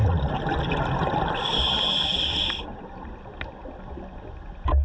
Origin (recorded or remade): recorded